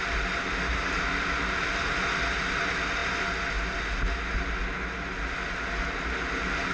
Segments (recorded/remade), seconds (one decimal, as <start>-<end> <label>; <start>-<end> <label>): 0.0-6.7 recorded